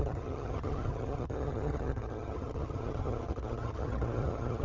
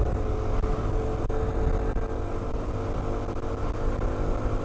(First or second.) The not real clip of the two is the first